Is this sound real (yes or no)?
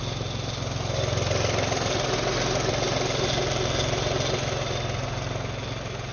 yes